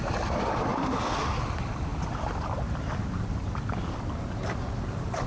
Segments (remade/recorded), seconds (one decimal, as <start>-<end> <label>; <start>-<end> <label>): 0.0-0.7 recorded; 0.7-1.3 remade; 1.3-1.9 recorded; 1.9-2.5 remade; 2.5-5.3 recorded